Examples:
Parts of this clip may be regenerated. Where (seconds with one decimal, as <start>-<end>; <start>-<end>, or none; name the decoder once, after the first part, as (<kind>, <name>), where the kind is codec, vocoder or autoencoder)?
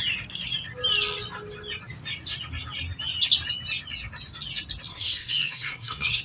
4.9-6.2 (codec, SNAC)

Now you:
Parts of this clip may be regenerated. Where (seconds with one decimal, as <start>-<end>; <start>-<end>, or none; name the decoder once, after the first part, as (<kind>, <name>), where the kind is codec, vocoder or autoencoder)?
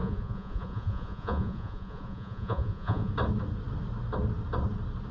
0.0-3.1 (vocoder, Vocos)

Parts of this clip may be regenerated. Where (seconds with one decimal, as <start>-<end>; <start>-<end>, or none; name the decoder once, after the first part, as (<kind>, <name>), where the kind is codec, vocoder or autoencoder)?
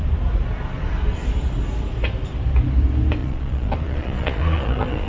3.2-5.1 (vocoder, Vocos)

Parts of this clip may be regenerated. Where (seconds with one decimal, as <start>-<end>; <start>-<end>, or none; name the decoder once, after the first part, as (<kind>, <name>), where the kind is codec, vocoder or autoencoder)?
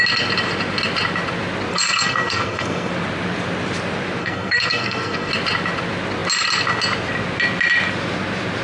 1.7-2.9 (codec, SNAC); 4.2-5.3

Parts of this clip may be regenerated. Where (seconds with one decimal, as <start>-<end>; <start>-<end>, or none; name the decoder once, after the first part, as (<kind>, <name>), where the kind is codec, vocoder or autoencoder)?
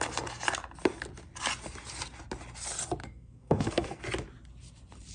3.0-4.0 (codec, SNAC)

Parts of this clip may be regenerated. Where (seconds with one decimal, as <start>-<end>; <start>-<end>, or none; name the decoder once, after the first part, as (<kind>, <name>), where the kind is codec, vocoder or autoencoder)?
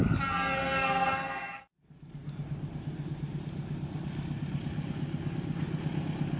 0.6-1.6 (codec, SNAC)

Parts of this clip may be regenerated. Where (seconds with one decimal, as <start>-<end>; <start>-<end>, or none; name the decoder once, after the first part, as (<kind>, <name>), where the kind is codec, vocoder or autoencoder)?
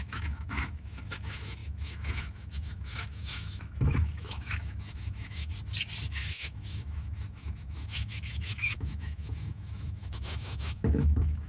0.0-5.5 (autoencoder, DAC-VAE); 6.1-11.5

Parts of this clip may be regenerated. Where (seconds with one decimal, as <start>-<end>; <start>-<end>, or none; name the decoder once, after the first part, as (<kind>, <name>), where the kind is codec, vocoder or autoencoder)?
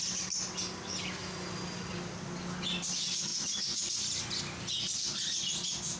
none